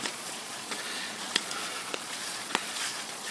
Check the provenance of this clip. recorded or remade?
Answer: remade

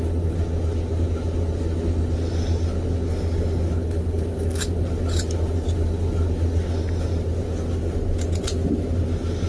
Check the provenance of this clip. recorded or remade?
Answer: recorded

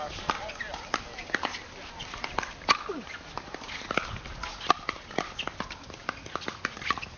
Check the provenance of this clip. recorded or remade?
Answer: recorded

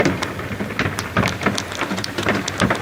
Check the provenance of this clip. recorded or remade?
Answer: recorded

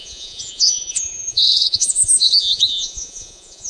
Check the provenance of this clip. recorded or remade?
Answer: remade